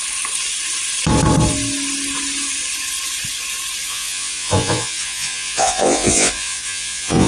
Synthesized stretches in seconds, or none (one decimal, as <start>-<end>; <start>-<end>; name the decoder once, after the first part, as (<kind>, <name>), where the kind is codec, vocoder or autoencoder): 3.9-7.3 (vocoder, Vocos)